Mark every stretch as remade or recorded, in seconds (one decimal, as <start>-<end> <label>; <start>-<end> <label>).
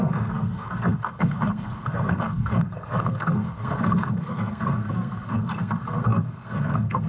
0.0-7.1 remade